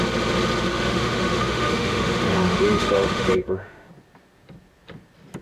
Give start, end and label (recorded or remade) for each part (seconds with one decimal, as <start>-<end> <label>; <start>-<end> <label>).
0.0-0.7 recorded; 0.7-3.9 remade; 3.9-5.4 recorded